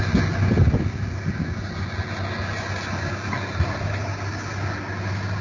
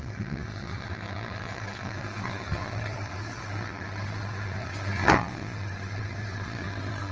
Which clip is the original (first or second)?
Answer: first